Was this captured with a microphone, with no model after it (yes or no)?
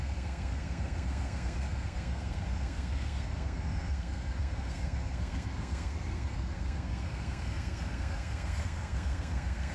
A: no